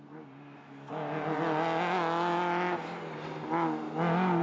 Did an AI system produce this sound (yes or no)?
no